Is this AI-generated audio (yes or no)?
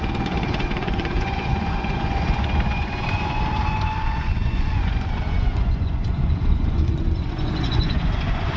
yes